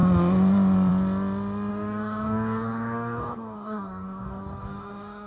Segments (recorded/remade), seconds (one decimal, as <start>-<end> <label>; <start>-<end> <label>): 0.0-1.7 recorded; 1.7-5.3 remade